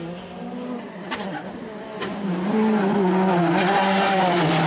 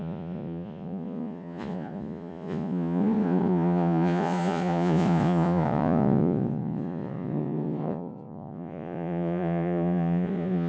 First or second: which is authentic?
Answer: first